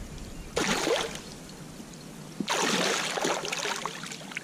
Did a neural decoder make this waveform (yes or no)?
no